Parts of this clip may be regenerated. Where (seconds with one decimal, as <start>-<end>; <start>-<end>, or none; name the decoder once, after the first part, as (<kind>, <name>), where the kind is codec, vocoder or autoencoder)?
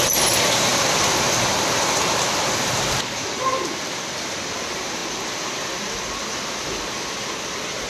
none